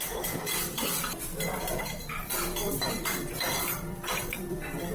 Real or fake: fake